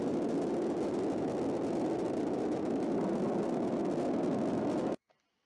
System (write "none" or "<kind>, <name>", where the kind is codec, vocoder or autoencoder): none